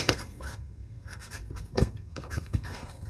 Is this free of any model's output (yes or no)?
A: no